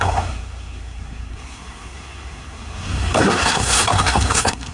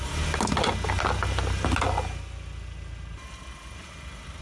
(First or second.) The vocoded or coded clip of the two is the first